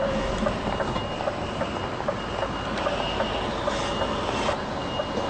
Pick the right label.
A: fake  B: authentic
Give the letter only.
B